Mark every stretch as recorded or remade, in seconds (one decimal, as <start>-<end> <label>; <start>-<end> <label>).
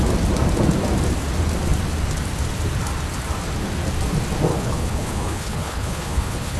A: 0.0-4.5 recorded; 4.5-6.6 remade